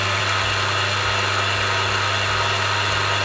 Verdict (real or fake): real